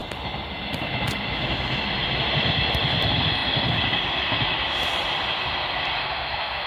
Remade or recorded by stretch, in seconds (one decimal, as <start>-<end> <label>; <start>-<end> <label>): 0.0-6.0 recorded; 6.0-6.7 remade